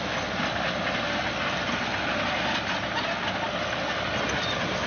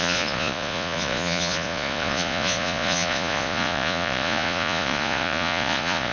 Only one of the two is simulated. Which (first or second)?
second